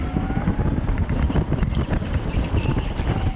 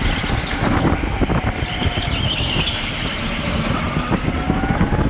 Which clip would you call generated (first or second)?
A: first